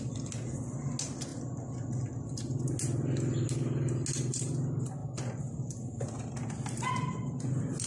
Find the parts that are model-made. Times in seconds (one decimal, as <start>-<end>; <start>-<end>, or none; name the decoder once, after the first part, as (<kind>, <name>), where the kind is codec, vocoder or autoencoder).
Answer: none

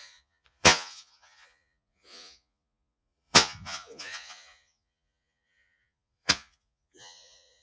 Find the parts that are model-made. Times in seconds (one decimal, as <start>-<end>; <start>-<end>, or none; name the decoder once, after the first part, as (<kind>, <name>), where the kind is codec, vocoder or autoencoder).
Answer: 0.0-7.6 (vocoder, Vocos)

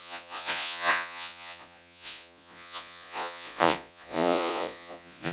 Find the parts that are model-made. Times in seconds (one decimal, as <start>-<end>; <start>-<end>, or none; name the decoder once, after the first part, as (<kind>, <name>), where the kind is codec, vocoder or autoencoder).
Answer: 0.0-5.3 (vocoder, Vocos)

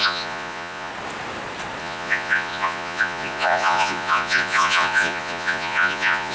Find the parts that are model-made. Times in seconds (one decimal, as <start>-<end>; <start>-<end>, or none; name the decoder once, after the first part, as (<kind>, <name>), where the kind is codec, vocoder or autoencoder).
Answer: 0.0-0.9 (vocoder, Vocos); 1.8-6.3

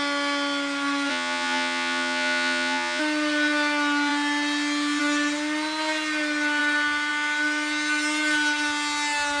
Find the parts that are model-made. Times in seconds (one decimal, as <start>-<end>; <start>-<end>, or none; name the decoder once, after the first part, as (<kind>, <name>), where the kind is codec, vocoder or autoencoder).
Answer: 1.1-3.0 (vocoder, Vocos)

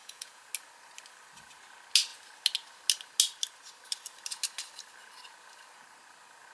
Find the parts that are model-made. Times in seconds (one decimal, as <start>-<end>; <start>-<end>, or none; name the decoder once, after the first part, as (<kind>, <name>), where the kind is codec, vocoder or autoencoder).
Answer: 0.0-0.5 (vocoder, Vocos)

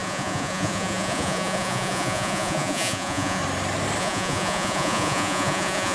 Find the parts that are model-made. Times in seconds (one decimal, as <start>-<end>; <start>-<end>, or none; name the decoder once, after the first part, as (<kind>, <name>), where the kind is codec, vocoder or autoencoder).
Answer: 0.0-3.4 (vocoder, Vocos); 4.0-5.9

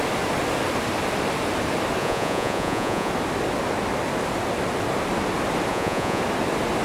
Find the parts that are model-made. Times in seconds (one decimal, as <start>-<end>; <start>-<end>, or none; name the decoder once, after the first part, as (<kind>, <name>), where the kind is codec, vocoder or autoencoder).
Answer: 2.0-3.1 (vocoder, Vocos); 5.7-6.2